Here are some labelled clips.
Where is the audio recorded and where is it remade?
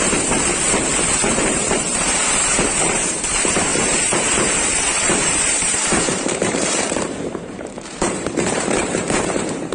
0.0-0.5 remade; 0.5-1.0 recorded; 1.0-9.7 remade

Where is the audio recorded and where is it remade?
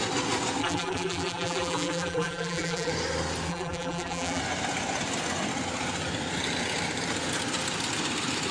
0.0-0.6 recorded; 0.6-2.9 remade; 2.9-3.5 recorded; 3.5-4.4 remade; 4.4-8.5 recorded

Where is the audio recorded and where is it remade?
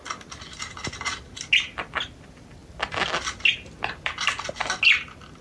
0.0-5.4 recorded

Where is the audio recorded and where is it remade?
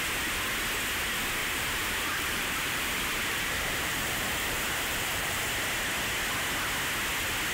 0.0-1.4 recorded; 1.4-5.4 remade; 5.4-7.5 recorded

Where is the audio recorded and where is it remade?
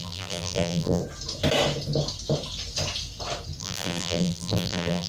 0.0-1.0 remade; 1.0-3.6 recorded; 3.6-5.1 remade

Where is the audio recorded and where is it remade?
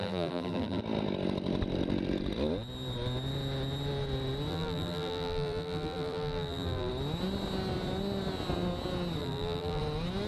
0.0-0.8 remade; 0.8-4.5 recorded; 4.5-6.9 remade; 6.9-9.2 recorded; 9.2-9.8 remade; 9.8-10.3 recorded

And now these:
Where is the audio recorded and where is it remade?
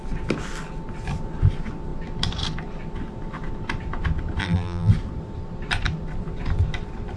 0.0-4.4 recorded; 4.4-4.9 remade; 4.9-7.2 recorded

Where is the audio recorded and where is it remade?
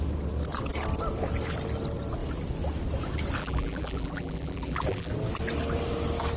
0.0-3.4 recorded; 3.4-5.1 remade; 5.1-6.4 recorded